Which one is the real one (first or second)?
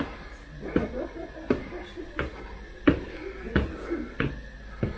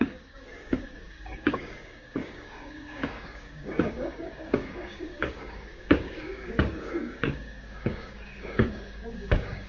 first